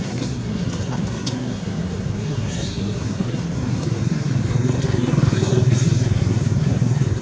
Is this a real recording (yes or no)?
no